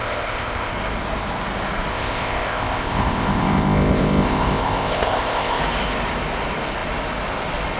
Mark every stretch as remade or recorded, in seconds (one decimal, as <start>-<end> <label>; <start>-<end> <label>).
0.0-0.7 remade; 0.7-1.9 recorded; 1.9-5.6 remade; 5.6-7.8 recorded